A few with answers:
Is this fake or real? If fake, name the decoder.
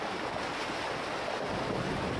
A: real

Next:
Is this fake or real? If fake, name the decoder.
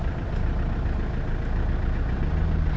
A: real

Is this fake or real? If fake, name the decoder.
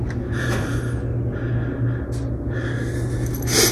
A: real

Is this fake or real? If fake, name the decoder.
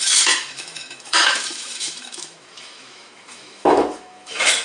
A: fake, autoencoder, DAC-VAE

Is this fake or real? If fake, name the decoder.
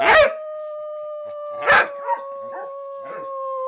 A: real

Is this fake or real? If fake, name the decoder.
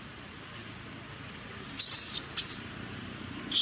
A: real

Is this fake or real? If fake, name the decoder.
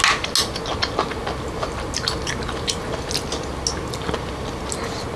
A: real